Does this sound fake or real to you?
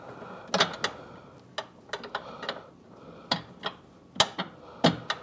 real